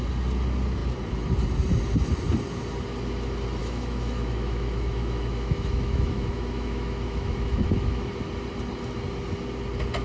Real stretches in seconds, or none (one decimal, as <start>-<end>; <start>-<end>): 0.0-3.6; 8.1-10.0